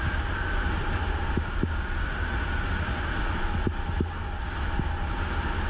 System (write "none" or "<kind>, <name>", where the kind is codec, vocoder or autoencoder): none